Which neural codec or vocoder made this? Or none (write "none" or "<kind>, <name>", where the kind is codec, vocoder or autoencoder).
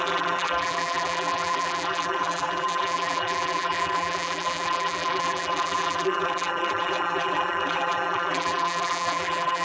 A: vocoder, BigVGAN v2